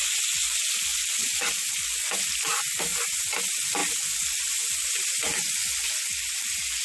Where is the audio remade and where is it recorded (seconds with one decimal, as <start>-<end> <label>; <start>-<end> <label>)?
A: 0.0-6.8 recorded